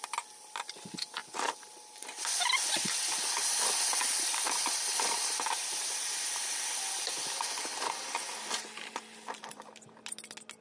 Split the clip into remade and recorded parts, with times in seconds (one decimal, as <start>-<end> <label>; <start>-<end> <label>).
0.0-10.6 recorded